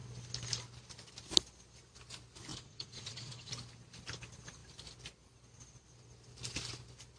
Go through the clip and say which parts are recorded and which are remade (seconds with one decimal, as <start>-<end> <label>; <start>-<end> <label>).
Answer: 0.0-2.5 recorded; 2.5-3.5 remade; 3.5-7.2 recorded